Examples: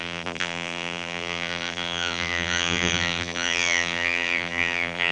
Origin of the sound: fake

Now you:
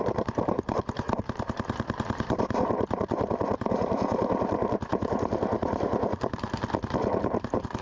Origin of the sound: fake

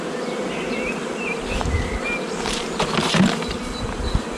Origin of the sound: real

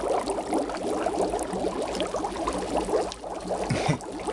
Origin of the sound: real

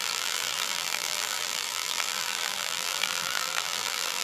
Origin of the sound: fake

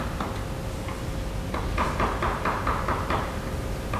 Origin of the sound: real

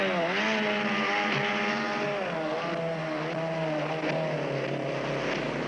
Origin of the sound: real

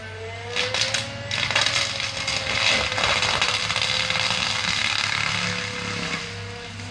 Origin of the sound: real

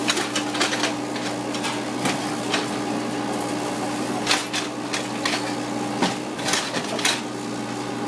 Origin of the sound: real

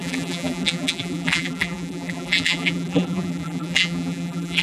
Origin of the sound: fake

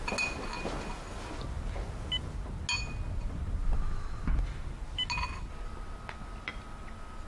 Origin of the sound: real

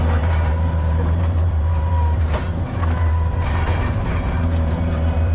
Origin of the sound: fake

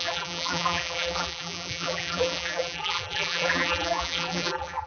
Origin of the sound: fake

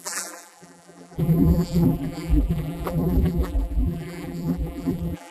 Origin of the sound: fake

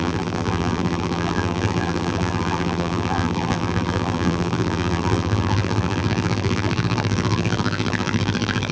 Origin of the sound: fake